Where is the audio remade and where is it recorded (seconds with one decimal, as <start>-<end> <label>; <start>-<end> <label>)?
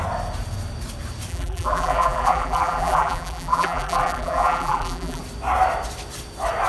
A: 0.0-1.3 recorded; 1.3-5.2 remade; 5.2-6.7 recorded